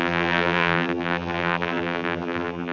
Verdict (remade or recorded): remade